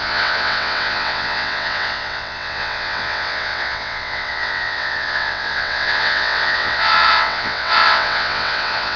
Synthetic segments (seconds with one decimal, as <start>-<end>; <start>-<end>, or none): 0.0-9.0